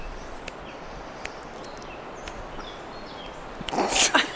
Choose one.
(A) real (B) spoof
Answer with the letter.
A